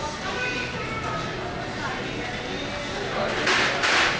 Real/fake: real